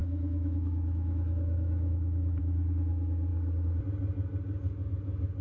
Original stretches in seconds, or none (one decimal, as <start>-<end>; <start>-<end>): 2.4-5.4